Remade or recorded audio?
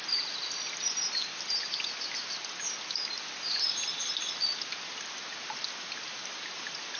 recorded